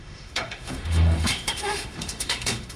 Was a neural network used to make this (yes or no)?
yes